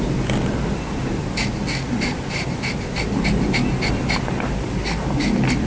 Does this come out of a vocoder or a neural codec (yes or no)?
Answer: yes